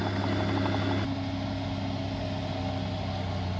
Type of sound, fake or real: real